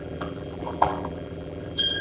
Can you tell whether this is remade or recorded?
remade